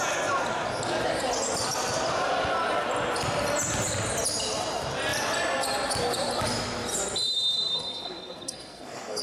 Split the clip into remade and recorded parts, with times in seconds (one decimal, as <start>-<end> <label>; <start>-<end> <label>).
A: 0.0-7.9 recorded; 7.9-9.2 remade